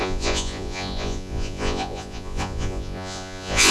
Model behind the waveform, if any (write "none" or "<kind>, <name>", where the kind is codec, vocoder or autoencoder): vocoder, Vocos